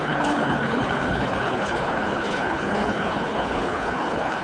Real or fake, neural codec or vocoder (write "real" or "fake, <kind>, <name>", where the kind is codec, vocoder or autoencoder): fake, codec, HILCodec